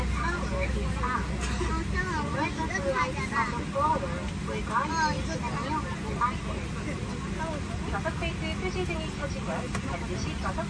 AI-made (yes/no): no